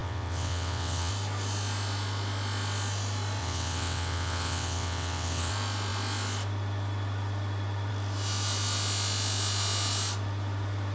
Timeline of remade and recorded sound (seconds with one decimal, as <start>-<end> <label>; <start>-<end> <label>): 0.0-1.1 remade; 1.1-3.4 recorded; 3.4-5.5 remade; 5.5-10.9 recorded